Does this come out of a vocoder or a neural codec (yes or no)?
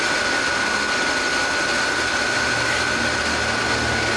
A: no